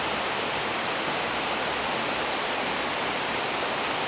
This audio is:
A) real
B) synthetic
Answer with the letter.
A